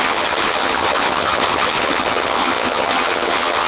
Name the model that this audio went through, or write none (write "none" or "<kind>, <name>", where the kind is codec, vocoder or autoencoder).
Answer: vocoder, HiFi-GAN